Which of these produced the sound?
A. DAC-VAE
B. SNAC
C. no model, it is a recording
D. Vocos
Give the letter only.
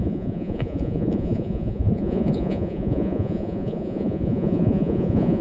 D